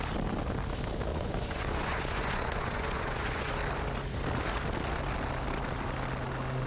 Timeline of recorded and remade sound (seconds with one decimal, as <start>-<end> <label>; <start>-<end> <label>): 0.0-1.1 recorded; 1.1-3.5 remade; 3.5-6.7 recorded